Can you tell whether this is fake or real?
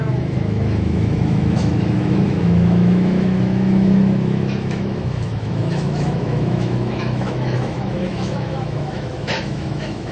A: fake